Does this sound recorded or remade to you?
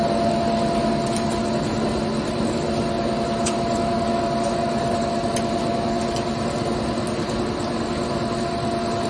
recorded